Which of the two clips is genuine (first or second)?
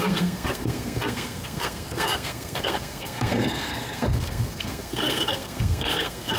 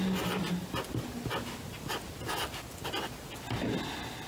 second